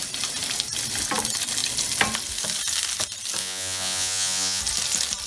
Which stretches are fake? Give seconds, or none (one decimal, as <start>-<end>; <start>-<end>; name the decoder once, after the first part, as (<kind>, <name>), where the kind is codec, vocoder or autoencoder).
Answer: 3.4-4.6 (vocoder, Vocos)